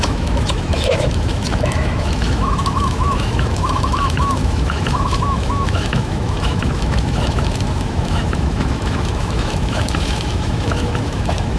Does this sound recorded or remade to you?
remade